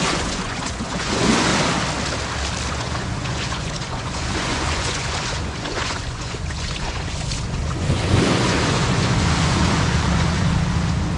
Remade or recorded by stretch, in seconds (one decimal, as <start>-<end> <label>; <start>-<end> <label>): 0.0-1.5 remade; 1.5-2.7 recorded; 2.7-11.2 remade